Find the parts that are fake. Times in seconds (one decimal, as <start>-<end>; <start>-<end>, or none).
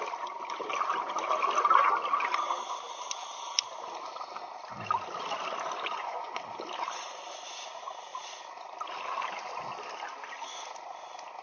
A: 5.9-6.4